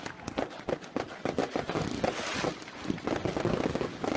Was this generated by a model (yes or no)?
no